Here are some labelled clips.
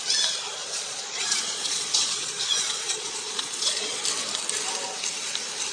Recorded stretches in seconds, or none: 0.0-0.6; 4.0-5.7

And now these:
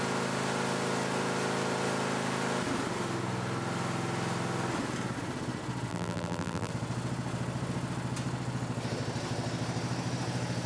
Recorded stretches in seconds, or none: 0.0-5.9; 6.7-10.7

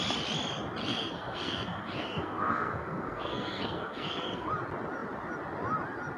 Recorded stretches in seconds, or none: 0.0-0.8; 4.5-6.2

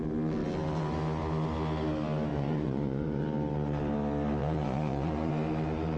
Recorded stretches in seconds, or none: 0.0-2.3; 3.2-4.4; 5.3-6.0